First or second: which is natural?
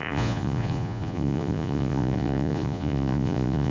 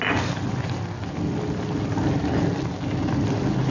second